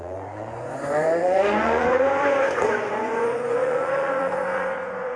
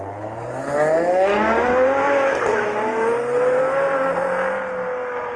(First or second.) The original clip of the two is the second